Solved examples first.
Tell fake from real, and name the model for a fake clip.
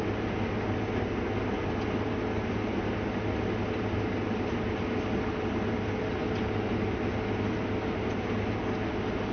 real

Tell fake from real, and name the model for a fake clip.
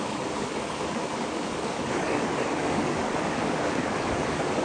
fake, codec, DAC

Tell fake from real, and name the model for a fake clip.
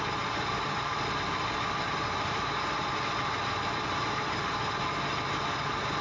real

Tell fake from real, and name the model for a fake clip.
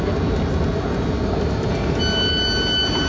real